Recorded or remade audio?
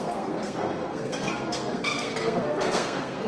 remade